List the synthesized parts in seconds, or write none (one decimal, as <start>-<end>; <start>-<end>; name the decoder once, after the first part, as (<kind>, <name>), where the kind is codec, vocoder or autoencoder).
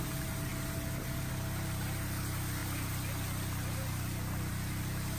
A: none